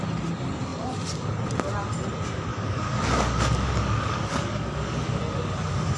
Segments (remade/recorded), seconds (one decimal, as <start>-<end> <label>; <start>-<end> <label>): 0.0-2.5 recorded; 2.5-5.2 remade; 5.2-6.0 recorded